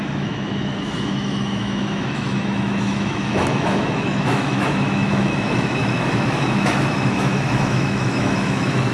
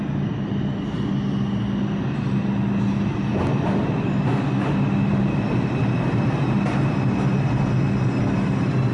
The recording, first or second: second